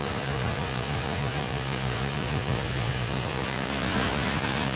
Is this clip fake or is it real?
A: fake